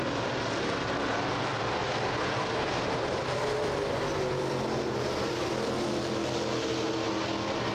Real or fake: real